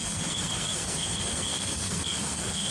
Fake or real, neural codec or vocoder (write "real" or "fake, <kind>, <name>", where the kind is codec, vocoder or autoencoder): fake, codec, SNAC